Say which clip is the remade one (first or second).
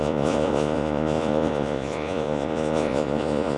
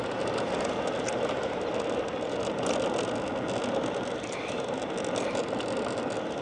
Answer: first